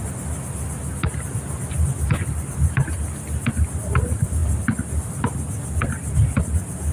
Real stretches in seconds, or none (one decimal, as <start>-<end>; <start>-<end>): 0.0-6.9